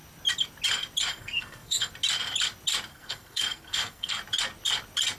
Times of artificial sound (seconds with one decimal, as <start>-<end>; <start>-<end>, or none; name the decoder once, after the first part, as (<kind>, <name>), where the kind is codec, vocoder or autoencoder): 1.1-1.9 (codec, SNAC); 2.9-4.2

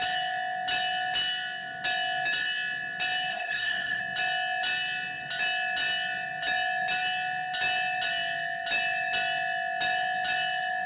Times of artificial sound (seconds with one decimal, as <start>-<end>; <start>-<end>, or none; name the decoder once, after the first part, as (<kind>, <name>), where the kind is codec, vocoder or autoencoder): 3.3-4.0 (codec, SNAC)

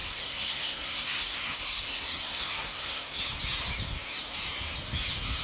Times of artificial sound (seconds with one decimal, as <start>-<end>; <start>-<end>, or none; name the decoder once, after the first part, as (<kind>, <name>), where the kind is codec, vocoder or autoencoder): 0.0-3.2 (codec, SNAC)

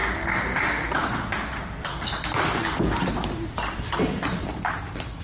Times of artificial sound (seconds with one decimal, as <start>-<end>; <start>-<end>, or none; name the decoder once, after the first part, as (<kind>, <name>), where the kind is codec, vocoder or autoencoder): none

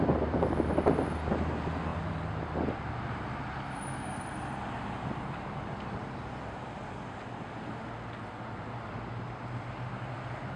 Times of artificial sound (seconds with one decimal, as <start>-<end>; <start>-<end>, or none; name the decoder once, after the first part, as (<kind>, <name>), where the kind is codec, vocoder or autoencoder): none

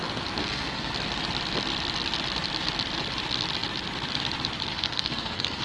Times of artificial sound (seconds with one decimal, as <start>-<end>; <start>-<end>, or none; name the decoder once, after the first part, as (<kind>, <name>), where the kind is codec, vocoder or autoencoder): 0.4-0.9 (codec, SNAC); 4.7-5.6